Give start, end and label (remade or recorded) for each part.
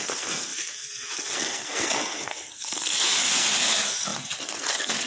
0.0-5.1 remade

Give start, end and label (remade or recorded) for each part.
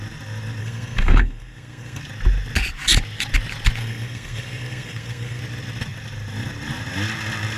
0.0-0.6 recorded; 0.6-2.0 remade; 2.0-3.8 recorded; 3.8-5.4 remade; 5.4-7.6 recorded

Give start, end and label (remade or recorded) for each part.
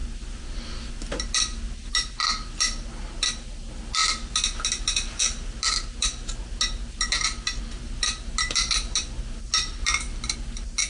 0.0-10.9 recorded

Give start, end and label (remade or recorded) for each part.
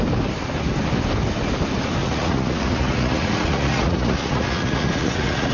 0.0-2.0 recorded; 2.0-5.5 remade